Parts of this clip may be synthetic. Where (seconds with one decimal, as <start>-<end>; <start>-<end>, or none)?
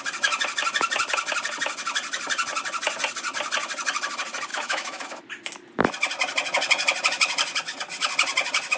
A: 4.5-5.2